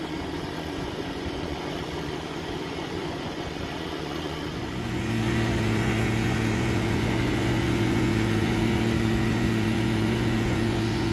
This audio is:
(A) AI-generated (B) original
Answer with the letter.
A